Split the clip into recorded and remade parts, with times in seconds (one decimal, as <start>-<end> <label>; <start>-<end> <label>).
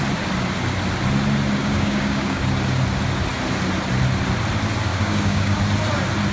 0.0-1.6 recorded; 1.6-2.4 remade; 2.4-4.9 recorded; 4.9-5.6 remade; 5.6-6.3 recorded